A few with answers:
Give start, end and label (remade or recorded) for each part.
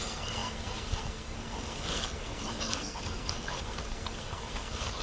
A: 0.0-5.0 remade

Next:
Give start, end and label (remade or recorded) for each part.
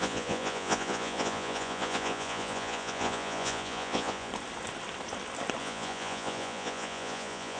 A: 0.0-4.3 remade; 4.3-5.6 recorded; 5.6-7.6 remade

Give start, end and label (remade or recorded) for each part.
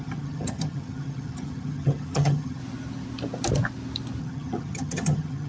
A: 0.0-2.6 remade; 2.6-4.2 recorded; 4.2-5.5 remade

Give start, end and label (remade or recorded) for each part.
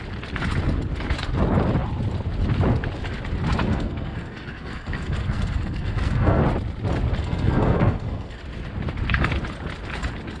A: 0.0-3.7 recorded; 3.7-6.4 remade; 6.4-7.2 recorded; 7.2-8.4 remade; 8.4-10.4 recorded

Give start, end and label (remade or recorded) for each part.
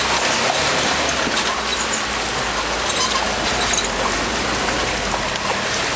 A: 0.0-6.0 recorded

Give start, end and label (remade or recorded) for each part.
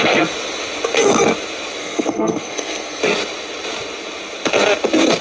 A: 0.0-1.8 recorded; 1.8-3.0 remade; 3.0-5.2 recorded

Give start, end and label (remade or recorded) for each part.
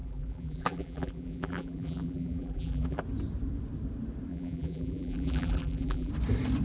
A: 0.0-3.0 remade; 3.0-4.3 recorded; 4.3-6.1 remade; 6.1-6.6 recorded